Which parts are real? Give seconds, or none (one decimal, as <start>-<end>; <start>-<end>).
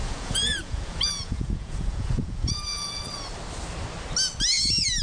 3.0-5.0